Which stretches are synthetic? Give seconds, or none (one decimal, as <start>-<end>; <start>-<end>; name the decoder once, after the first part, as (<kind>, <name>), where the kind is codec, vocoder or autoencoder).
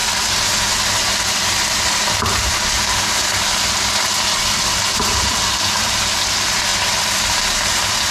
none